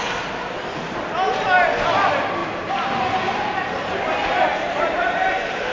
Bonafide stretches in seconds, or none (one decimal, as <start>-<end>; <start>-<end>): 0.0-2.4; 3.9-4.5; 5.3-5.7